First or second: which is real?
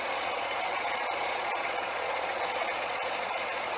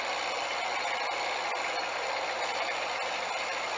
second